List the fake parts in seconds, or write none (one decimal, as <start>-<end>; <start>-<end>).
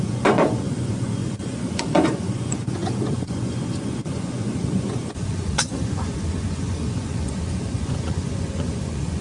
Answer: 0.0-9.2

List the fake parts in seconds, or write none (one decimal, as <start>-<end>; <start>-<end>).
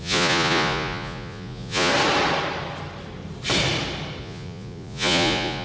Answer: 0.0-1.9; 4.2-5.6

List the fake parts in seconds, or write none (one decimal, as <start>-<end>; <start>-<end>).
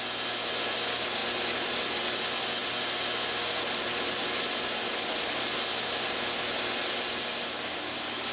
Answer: none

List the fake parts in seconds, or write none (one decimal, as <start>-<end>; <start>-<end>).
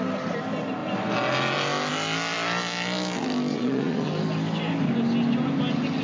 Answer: 3.5-4.1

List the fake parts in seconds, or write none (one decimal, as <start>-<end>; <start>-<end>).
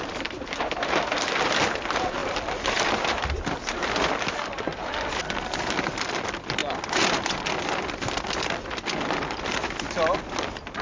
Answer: none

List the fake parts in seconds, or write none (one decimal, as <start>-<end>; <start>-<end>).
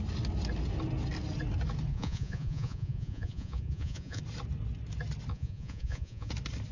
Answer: 1.9-4.2; 5.3-6.3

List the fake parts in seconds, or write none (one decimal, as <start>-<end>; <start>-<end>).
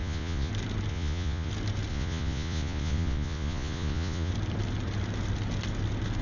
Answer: 0.0-0.5; 0.9-1.5; 1.9-4.3